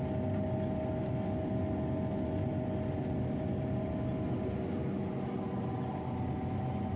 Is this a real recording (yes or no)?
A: yes